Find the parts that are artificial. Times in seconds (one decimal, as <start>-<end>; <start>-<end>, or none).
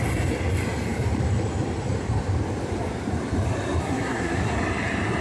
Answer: 3.8-4.5